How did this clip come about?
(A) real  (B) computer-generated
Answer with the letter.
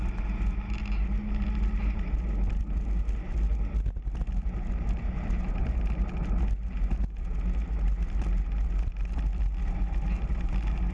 A